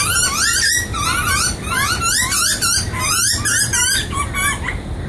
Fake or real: real